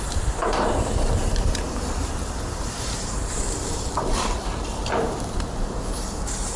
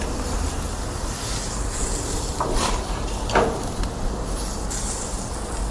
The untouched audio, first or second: second